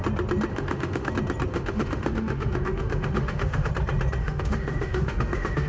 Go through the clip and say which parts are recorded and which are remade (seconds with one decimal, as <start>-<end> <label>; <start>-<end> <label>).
0.0-0.5 recorded; 0.5-1.1 remade; 1.1-1.5 recorded; 1.5-3.7 remade; 3.7-4.2 recorded; 4.2-5.7 remade